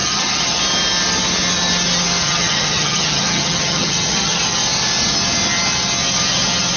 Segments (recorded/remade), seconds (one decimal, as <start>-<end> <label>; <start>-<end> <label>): 0.0-0.6 remade; 0.6-2.2 recorded; 2.2-4.4 remade; 4.4-6.8 recorded

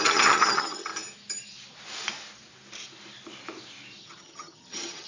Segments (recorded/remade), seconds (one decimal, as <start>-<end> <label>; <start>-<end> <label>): 0.0-0.9 remade; 0.9-4.0 recorded; 4.0-5.1 remade

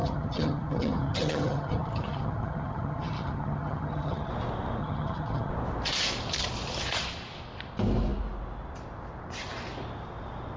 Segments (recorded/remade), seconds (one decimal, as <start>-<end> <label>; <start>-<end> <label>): 0.0-4.3 remade; 4.3-4.8 recorded; 4.8-5.5 remade; 5.5-10.6 recorded

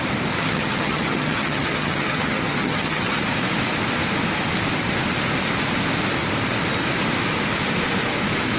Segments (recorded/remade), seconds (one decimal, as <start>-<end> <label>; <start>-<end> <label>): 0.0-0.4 recorded; 0.4-3.2 remade; 3.2-8.6 recorded

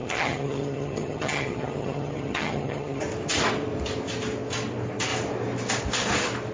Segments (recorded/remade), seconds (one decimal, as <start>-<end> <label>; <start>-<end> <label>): 0.0-3.0 remade; 3.0-6.5 recorded

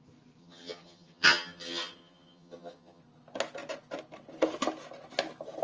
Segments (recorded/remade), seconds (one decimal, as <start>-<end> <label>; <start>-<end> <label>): 0.0-0.4 recorded; 0.4-3.0 remade; 3.0-5.6 recorded

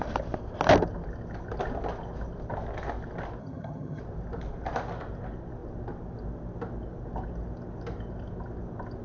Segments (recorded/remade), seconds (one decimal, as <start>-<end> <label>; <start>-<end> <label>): 0.0-3.4 recorded; 3.4-4.0 remade; 4.0-9.0 recorded